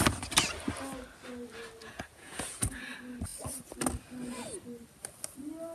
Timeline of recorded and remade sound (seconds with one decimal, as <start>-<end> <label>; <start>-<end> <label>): 0.0-1.8 recorded; 1.8-2.8 remade; 2.8-5.7 recorded